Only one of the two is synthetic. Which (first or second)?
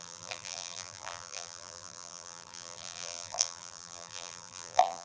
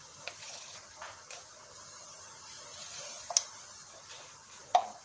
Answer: first